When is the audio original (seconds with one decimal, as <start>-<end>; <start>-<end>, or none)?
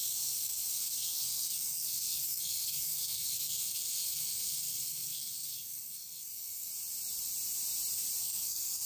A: 6.7-8.2